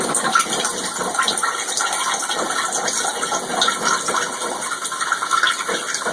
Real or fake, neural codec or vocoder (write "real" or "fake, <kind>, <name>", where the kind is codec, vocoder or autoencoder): real